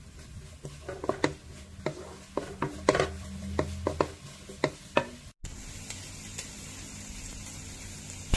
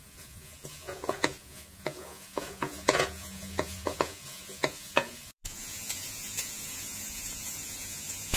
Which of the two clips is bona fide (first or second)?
first